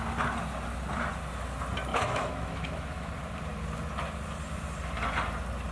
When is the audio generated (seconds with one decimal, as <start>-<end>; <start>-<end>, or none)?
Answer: 1.9-3.1